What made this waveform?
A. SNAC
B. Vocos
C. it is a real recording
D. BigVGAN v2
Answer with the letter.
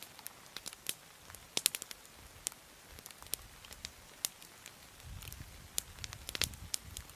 C